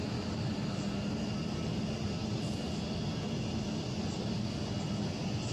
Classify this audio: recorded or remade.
recorded